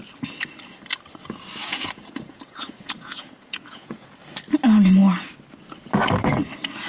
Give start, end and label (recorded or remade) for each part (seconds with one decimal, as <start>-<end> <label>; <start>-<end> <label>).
0.0-1.6 recorded; 1.6-4.0 remade; 4.0-6.9 recorded